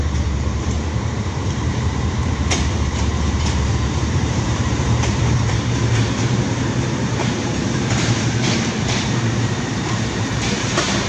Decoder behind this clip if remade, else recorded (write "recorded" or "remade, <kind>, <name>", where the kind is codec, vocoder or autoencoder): remade, vocoder, BigVGAN v2